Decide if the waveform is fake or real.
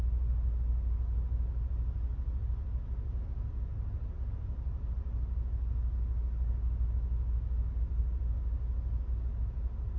real